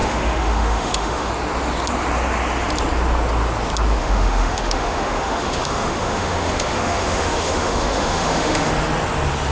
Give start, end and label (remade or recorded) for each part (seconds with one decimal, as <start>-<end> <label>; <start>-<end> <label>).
0.0-1.3 remade; 1.3-4.0 recorded; 4.0-8.7 remade; 8.7-9.5 recorded